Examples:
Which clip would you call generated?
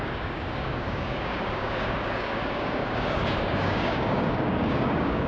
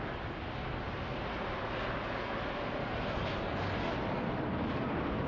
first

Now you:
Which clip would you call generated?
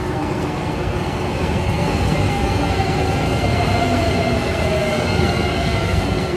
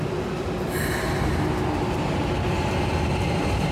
first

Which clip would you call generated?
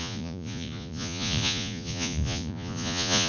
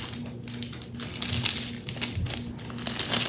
first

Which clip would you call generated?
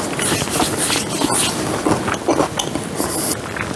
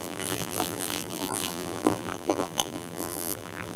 second